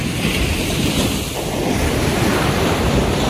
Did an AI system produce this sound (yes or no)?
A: no